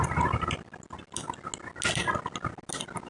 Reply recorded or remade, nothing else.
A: recorded